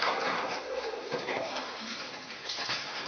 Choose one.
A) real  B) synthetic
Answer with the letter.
B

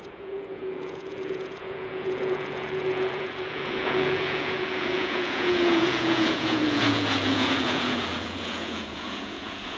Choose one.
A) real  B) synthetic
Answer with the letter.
B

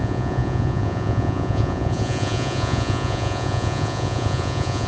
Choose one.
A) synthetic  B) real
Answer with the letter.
A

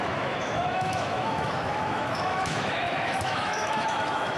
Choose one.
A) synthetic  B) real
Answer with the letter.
A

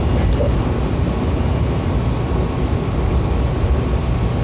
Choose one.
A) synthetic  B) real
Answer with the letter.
B